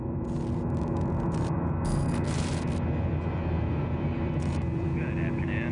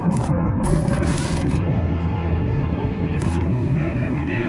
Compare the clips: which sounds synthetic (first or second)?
second